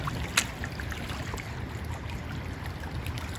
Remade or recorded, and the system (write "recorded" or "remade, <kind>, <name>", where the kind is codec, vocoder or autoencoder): recorded